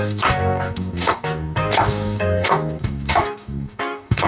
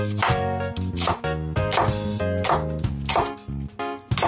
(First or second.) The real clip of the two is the second